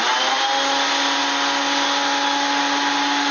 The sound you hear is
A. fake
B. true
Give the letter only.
B